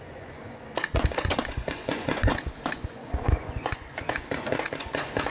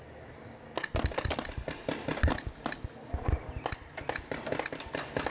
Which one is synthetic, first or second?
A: first